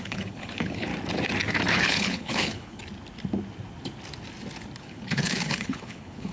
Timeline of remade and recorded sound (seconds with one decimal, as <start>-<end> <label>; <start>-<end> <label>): 0.0-0.9 remade; 0.9-1.7 recorded; 1.7-2.8 remade; 2.8-4.8 recorded; 4.8-6.3 remade